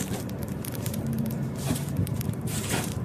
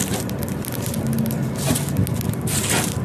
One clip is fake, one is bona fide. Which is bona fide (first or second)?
second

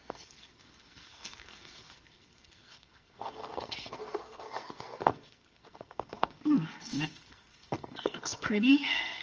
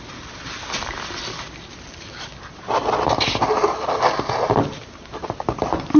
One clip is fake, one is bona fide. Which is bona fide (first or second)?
second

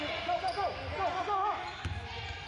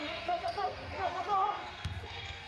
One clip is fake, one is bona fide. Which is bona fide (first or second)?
first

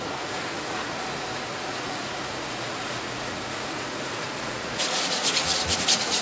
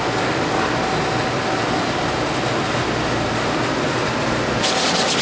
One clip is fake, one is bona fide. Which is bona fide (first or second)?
second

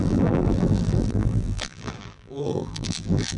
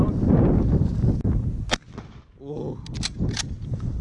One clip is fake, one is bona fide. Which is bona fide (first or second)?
second